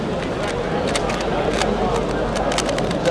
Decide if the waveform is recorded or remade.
recorded